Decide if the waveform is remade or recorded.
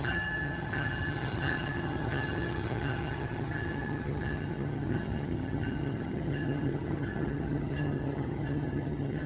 remade